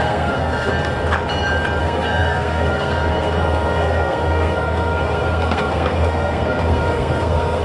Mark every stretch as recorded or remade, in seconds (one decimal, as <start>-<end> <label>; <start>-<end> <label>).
0.0-0.7 remade; 0.7-1.8 recorded; 1.8-7.6 remade